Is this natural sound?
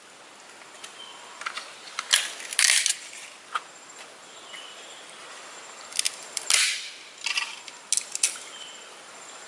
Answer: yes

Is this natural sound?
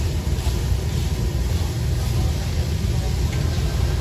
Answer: yes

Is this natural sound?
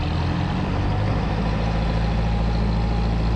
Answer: yes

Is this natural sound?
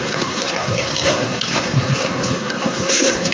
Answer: no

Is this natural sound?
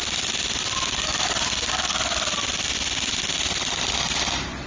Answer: yes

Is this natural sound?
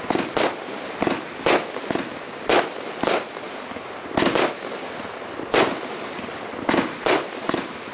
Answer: yes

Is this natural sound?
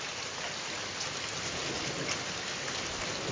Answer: yes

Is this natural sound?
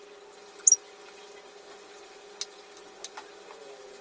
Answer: yes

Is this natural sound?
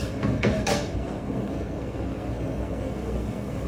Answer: no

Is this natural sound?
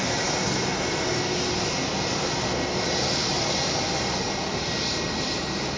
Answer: yes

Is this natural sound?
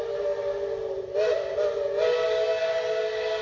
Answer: yes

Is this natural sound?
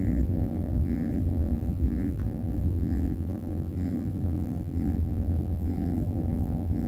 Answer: no